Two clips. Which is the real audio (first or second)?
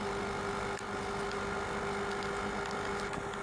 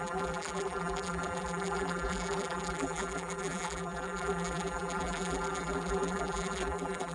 first